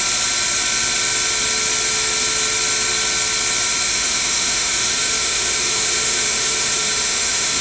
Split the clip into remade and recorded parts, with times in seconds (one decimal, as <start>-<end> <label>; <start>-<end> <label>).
0.0-3.9 recorded; 3.9-7.6 remade

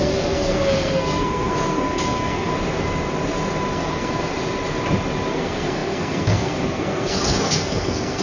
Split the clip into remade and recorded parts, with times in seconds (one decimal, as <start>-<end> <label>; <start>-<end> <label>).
0.0-2.5 remade; 2.5-3.7 recorded; 3.7-4.3 remade; 4.3-5.3 recorded; 5.3-8.2 remade

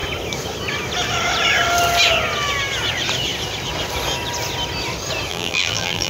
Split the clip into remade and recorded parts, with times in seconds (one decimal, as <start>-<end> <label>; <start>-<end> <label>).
0.0-5.3 recorded; 5.3-6.1 remade

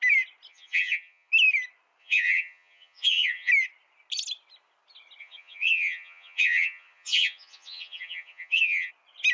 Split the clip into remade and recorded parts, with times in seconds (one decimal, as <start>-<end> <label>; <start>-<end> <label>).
0.0-0.5 recorded; 0.5-1.3 remade; 1.3-2.0 recorded; 2.0-3.5 remade; 3.5-5.2 recorded; 5.2-8.9 remade; 8.9-9.3 recorded

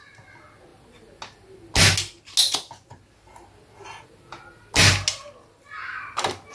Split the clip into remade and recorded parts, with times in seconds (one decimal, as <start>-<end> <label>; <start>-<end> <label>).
0.0-6.5 recorded

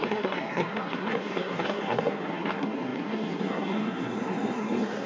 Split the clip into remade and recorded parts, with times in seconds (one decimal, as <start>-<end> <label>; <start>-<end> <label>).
0.0-5.1 remade